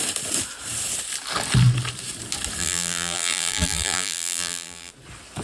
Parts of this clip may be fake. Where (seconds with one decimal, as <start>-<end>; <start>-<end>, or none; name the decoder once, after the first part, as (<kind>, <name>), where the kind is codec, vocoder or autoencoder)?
2.6-4.9 (vocoder, BigVGAN v2)